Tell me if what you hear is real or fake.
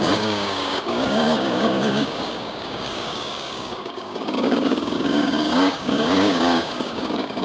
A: fake